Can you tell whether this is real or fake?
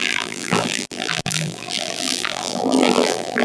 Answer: fake